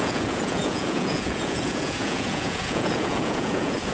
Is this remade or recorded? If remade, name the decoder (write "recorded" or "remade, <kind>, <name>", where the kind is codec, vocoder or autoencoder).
remade, vocoder, Vocos